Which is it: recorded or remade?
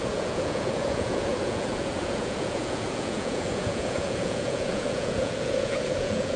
remade